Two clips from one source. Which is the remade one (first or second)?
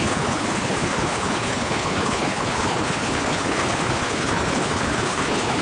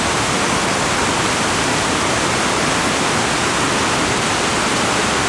first